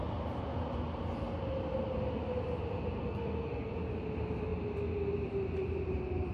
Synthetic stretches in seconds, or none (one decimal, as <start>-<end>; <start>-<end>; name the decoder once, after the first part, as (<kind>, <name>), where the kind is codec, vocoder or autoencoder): 3.0-3.7 (codec, SNAC)